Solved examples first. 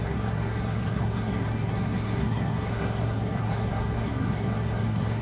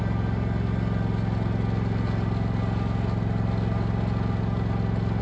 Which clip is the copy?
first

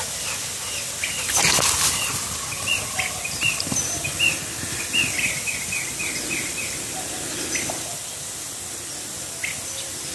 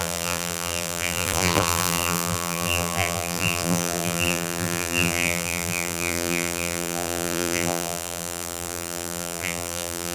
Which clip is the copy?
second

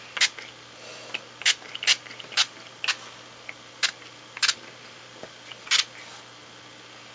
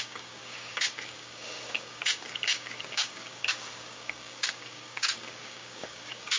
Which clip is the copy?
second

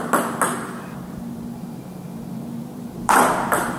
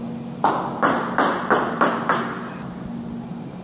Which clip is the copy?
first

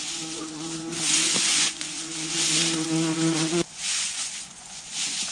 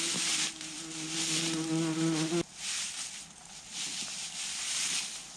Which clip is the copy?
first